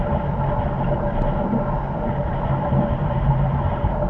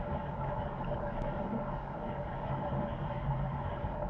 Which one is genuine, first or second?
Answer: first